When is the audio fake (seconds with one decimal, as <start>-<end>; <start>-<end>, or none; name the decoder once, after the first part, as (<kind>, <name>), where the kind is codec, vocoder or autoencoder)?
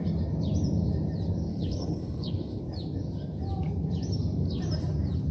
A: 1.5-2.6 (codec, HILCodec)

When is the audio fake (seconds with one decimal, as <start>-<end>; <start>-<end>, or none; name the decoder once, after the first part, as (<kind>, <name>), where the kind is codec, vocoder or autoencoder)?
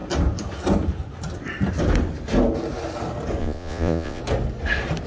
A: 3.4-4.2 (vocoder, Vocos)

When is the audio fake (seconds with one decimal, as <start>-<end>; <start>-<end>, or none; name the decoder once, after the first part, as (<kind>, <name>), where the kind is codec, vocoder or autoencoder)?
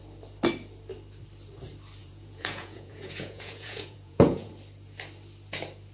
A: 2.0-4.5 (vocoder, Vocos)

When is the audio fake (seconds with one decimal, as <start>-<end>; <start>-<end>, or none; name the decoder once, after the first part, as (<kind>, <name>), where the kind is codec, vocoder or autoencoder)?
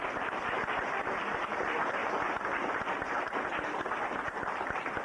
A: 2.0-2.9 (vocoder, BigVGAN v2)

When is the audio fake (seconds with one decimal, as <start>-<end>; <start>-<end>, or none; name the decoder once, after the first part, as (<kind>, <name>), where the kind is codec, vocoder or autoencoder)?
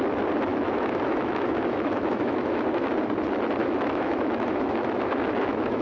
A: 0.5-2.9 (autoencoder, DAC-VAE); 3.6-5.8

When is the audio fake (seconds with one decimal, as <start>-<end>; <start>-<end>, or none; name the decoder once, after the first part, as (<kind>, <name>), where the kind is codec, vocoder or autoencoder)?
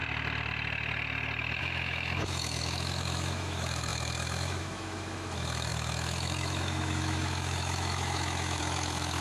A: 1.6-9.2 (autoencoder, DAC-VAE)